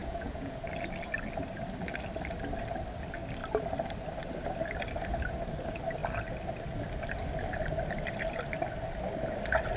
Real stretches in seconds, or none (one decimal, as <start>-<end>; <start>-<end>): 0.7-9.8